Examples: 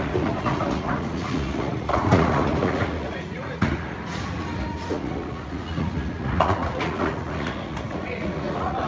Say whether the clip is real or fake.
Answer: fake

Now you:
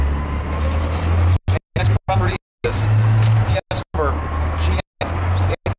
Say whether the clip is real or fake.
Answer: real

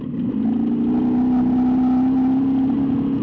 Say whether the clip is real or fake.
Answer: real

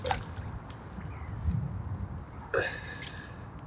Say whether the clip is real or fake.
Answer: real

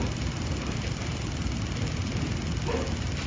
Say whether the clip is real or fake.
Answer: real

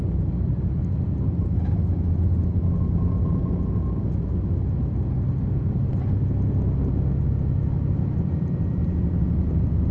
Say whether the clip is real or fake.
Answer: real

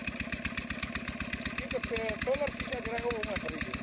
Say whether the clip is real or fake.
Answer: real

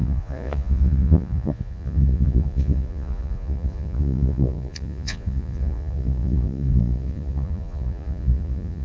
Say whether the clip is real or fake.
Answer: fake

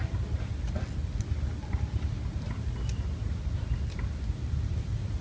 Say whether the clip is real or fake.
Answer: real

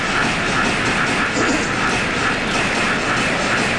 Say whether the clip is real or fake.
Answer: real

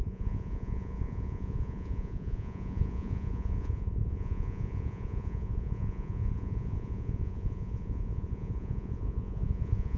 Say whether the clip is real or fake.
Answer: fake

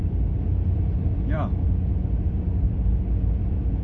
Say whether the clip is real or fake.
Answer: real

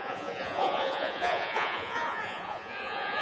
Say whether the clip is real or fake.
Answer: fake